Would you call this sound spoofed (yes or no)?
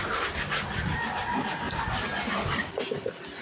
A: no